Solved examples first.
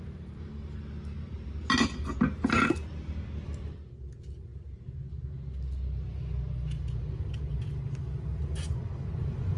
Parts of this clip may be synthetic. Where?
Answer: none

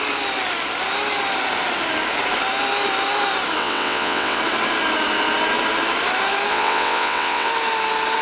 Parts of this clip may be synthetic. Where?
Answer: 3.6-4.4 (vocoder, WaveNeXt); 6.5-7.5

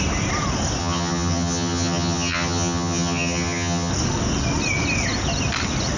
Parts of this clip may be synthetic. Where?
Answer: 0.8-3.9 (vocoder, HiFi-GAN)

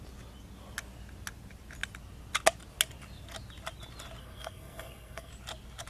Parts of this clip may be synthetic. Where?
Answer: 4.2-5.3 (codec, SNAC)

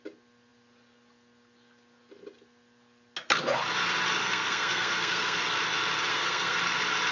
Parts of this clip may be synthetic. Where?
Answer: 4.2-5.4 (codec, SNAC); 6.1-6.6

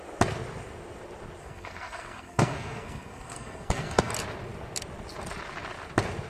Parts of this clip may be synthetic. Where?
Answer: 1.4-4.1 (codec, SNAC)

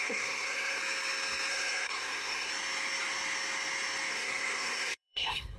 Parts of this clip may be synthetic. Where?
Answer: 0.0-0.8 (codec, SNAC); 1.5-2.5; 4.1-5.6

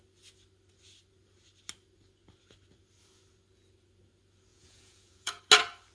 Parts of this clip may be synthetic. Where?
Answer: 4.5-5.4 (vocoder, Vocos)